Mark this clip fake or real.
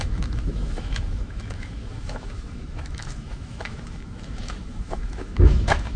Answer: fake